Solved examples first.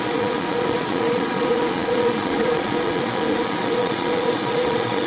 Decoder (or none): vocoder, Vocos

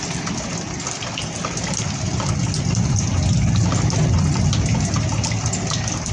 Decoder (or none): none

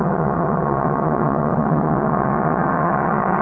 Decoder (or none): vocoder, WaveNeXt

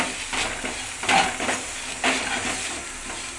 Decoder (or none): none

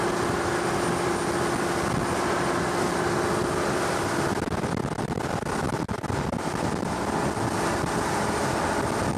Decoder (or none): none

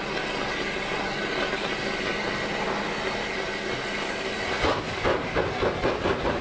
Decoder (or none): none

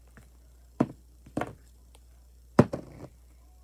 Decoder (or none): vocoder, BigVGAN v2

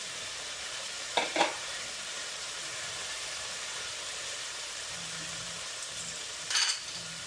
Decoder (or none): vocoder, BigVGAN v2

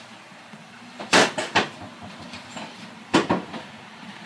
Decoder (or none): vocoder, BigVGAN v2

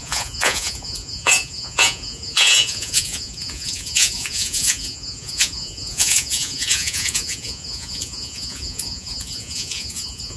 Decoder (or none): vocoder, Vocos